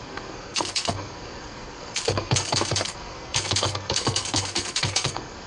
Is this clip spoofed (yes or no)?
yes